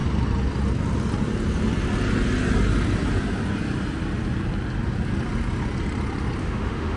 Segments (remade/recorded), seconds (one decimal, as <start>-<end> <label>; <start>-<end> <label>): 0.0-6.4 recorded; 6.4-7.0 remade